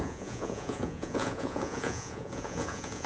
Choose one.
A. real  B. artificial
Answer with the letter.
B